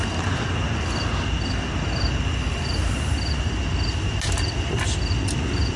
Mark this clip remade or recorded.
recorded